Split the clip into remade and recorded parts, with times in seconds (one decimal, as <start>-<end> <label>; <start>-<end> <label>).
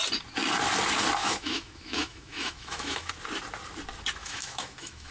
0.0-1.2 recorded; 1.2-3.1 remade; 3.1-4.2 recorded; 4.2-5.1 remade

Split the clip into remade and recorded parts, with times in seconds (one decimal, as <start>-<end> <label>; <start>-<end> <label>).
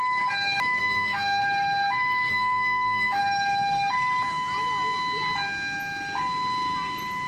0.0-0.8 recorded; 0.8-1.4 remade; 1.4-2.3 recorded; 2.3-3.2 remade; 3.2-7.3 recorded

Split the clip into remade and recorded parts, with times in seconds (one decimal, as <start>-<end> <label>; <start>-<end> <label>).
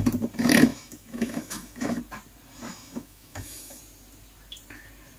0.0-0.7 recorded; 0.7-2.0 remade; 2.0-2.7 recorded; 2.7-3.8 remade; 3.8-5.2 recorded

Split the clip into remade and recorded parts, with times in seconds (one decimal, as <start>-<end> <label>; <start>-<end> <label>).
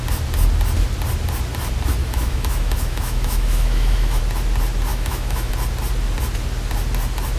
0.0-2.0 recorded; 2.0-4.2 remade; 4.2-4.9 recorded; 4.9-5.5 remade; 5.5-7.4 recorded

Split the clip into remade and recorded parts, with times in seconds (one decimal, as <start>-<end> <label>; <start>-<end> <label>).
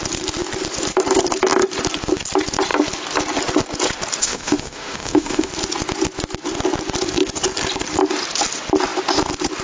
0.0-4.2 recorded; 4.2-5.5 remade; 5.5-9.6 recorded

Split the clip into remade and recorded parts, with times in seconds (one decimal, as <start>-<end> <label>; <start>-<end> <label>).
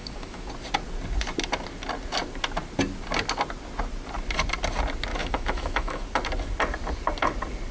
0.0-0.5 remade; 0.5-5.1 recorded; 5.1-6.0 remade; 6.0-7.7 recorded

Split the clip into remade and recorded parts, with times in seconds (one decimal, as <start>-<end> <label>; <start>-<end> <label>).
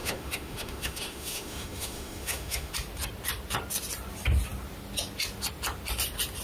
0.0-2.7 remade; 2.7-6.4 recorded